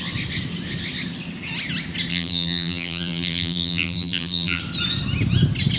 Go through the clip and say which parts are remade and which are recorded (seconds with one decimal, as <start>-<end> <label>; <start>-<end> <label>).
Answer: 0.0-2.1 recorded; 2.1-4.6 remade; 4.6-5.8 recorded